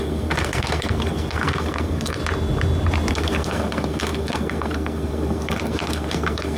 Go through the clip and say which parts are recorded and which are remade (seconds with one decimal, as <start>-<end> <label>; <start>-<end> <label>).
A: 0.0-2.2 remade; 2.2-3.1 recorded; 3.1-6.6 remade